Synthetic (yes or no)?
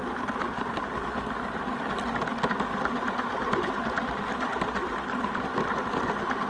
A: no